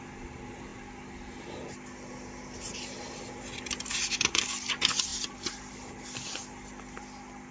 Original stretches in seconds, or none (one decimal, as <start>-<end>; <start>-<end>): 0.0-7.5